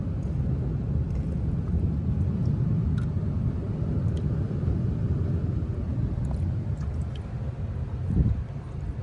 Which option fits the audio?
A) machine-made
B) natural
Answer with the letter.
B